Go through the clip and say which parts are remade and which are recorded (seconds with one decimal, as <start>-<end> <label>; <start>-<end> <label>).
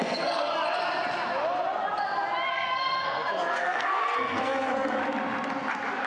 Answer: 0.0-0.5 remade; 0.5-2.5 recorded; 2.5-5.0 remade; 5.0-6.1 recorded